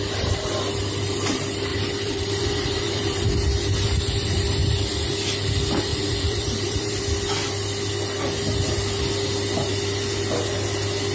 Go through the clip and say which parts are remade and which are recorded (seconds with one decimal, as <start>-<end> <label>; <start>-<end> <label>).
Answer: 0.0-1.7 recorded; 1.7-3.3 remade; 3.3-5.9 recorded; 5.9-7.0 remade; 7.0-11.1 recorded